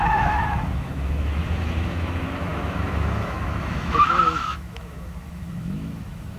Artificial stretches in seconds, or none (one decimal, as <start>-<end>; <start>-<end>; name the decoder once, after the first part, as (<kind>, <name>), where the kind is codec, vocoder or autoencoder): 0.0-6.4 (autoencoder, DAC-VAE)